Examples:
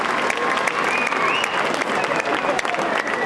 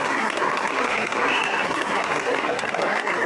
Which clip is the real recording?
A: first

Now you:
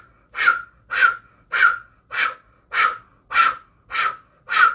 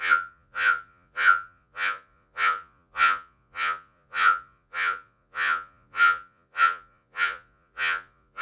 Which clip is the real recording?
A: first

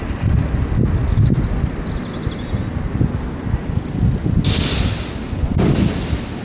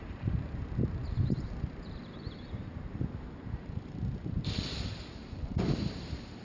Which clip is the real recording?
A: first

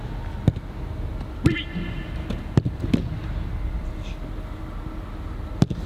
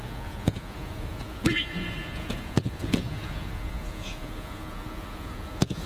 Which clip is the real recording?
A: first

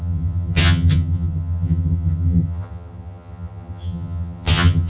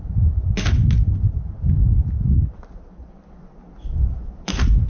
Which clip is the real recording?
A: second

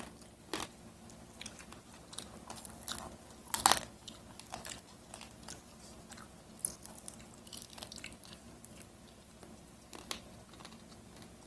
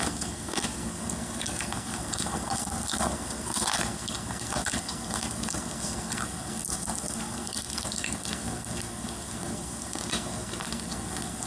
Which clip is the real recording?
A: first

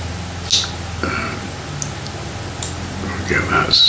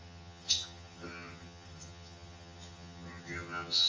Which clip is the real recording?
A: first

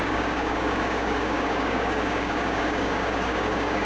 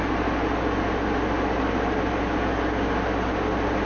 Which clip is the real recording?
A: second